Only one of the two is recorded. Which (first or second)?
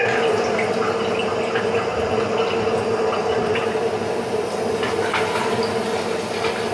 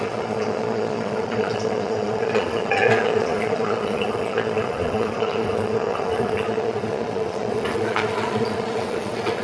first